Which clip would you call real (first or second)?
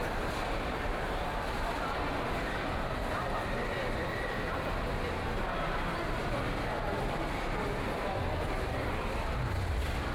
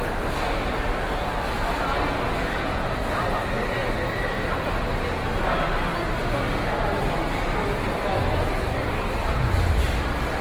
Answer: second